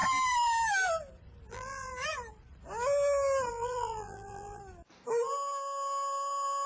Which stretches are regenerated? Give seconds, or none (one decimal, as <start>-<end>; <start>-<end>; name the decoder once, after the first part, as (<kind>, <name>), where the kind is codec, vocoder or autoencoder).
1.5-1.9 (vocoder, BigVGAN v2); 3.5-4.6

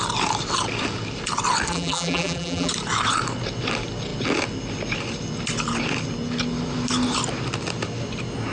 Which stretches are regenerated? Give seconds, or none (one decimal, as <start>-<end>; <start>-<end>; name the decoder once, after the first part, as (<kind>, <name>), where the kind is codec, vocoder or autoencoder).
1.7-2.7 (vocoder, BigVGAN v2)

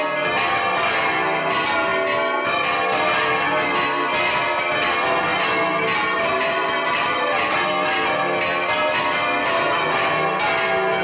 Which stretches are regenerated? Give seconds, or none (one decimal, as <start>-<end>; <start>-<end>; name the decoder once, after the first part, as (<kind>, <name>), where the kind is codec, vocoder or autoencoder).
6.3-7.3 (vocoder, BigVGAN v2)

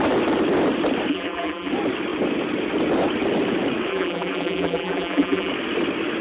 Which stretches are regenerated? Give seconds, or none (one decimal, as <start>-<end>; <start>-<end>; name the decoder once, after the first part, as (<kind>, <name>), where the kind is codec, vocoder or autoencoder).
1.1-1.7 (vocoder, BigVGAN v2); 3.9-5.5

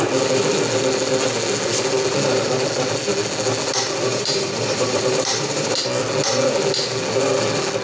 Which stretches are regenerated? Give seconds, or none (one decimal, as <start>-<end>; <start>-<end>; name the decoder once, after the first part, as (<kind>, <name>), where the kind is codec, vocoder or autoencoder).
4.1-5.8 (vocoder, BigVGAN v2)